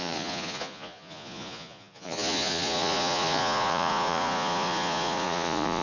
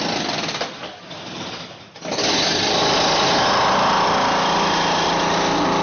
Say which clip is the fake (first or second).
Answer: first